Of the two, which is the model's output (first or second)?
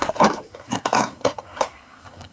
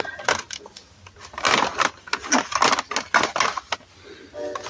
first